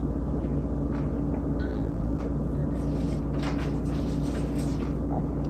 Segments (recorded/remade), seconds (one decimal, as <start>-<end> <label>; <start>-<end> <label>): 0.0-1.7 recorded; 1.7-2.2 remade; 2.2-5.5 recorded